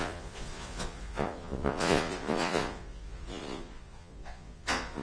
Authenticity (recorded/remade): remade